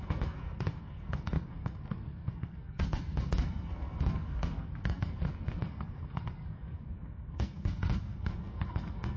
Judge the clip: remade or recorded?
remade